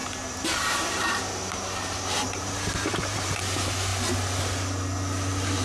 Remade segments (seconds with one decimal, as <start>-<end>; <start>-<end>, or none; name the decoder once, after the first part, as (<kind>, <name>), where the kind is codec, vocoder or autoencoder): 0.0-3.4 (vocoder, BigVGAN v2)